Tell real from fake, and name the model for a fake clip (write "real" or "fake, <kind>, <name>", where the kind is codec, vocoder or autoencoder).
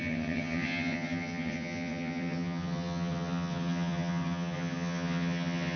fake, vocoder, HiFi-GAN